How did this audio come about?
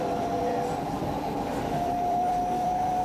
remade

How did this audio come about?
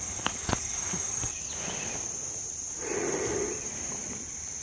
recorded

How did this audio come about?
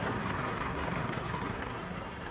remade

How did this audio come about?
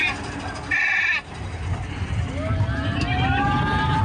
recorded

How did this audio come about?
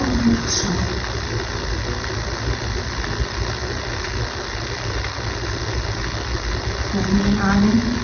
recorded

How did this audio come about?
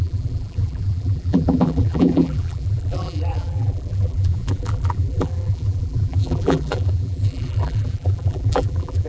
remade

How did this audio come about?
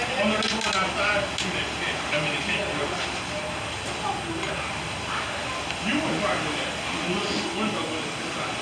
recorded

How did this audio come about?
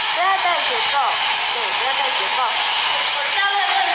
recorded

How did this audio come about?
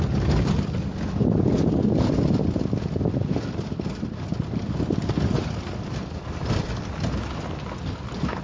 recorded